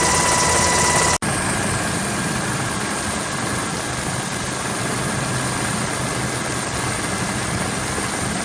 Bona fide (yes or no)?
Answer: yes